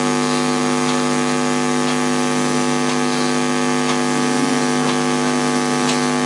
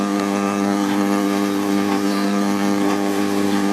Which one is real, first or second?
first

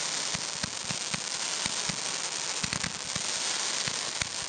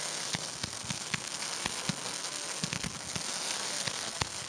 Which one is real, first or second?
first